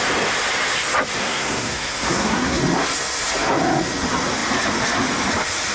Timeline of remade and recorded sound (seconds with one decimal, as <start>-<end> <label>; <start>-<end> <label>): 0.0-1.2 recorded; 1.2-2.6 remade; 2.6-5.7 recorded